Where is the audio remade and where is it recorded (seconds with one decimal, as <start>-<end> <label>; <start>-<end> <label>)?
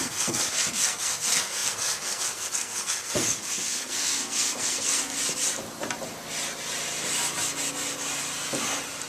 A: 0.0-5.2 remade; 5.2-9.1 recorded